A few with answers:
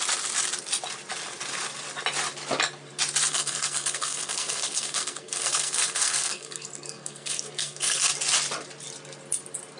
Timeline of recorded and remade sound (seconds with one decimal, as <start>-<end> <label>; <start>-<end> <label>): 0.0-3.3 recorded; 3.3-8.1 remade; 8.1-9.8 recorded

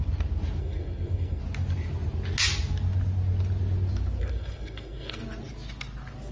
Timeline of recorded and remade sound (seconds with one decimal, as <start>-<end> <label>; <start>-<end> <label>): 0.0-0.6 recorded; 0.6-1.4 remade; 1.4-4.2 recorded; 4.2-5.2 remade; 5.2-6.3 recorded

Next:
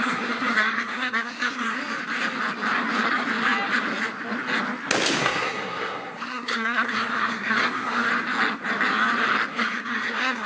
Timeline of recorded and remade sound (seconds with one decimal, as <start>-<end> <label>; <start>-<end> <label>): 0.0-1.8 remade; 1.8-5.2 recorded; 5.2-8.1 remade; 8.1-9.5 recorded; 9.5-10.5 remade

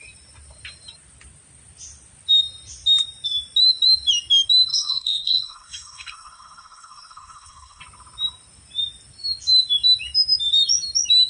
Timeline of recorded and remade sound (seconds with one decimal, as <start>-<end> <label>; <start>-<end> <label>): 0.0-4.7 recorded; 4.7-7.8 remade; 7.8-11.3 recorded

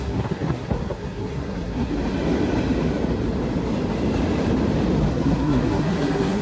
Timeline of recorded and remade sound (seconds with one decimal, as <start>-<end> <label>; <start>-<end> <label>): 0.0-1.9 remade; 1.9-5.1 recorded; 5.1-6.4 remade

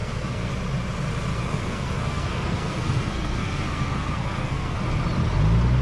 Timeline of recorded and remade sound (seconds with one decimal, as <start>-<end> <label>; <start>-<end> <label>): 0.0-0.5 remade; 0.5-1.3 recorded; 1.3-4.8 remade; 4.8-5.8 recorded

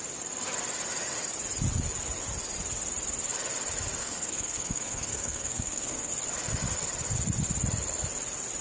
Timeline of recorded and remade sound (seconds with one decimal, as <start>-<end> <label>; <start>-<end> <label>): 0.0-4.0 recorded; 4.0-6.1 remade; 6.1-8.6 recorded

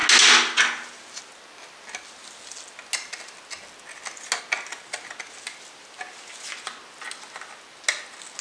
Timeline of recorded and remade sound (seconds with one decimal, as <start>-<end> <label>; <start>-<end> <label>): 0.0-8.4 recorded